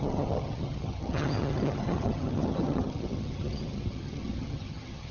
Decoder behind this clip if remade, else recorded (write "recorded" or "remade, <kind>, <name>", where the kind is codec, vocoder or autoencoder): remade, vocoder, HiFi-GAN